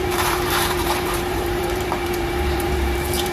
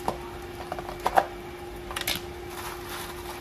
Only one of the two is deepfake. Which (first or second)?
first